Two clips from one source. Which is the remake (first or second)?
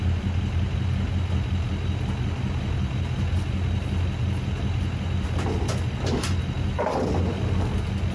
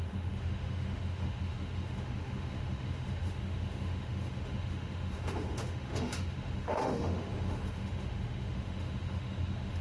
second